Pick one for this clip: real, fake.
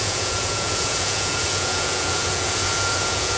fake